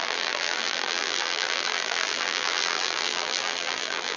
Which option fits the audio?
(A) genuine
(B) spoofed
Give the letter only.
B